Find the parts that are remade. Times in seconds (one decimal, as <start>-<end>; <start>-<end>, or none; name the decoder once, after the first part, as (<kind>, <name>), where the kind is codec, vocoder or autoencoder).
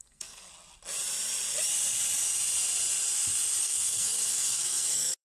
0.0-0.5 (codec, SNAC); 3.6-5.2